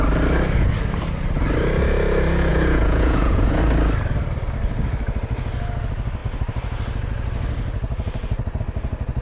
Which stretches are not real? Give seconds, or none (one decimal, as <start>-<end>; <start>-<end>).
2.5-3.6